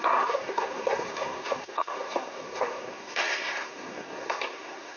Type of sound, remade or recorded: remade